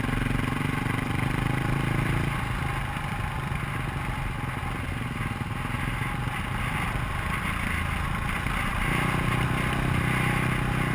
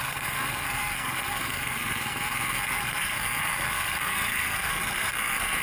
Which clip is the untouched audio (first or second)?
first